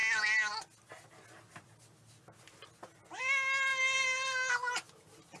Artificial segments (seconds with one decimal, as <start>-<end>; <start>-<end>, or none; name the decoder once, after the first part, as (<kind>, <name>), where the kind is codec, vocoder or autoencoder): none

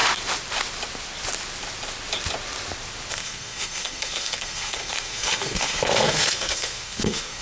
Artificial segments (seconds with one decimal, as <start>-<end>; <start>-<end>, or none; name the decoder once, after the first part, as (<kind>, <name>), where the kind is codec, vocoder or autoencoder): 3.1-7.4 (codec, SNAC)

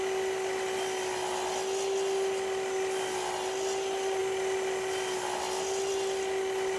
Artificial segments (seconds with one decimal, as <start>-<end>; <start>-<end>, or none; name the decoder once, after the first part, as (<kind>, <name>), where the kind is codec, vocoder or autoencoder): none